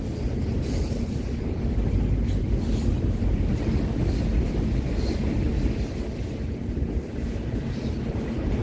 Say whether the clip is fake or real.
real